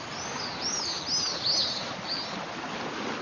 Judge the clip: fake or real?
real